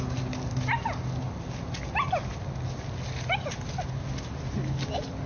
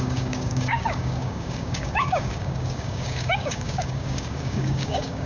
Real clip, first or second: first